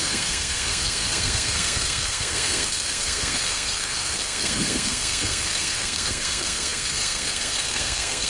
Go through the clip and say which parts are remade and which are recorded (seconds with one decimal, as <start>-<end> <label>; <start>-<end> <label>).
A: 0.0-8.3 remade